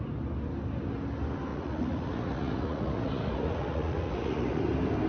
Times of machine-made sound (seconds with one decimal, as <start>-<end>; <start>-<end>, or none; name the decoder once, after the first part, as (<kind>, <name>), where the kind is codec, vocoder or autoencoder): 1.5-4.6 (vocoder, Vocos)